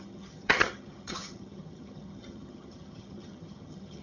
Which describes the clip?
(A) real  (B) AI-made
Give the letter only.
B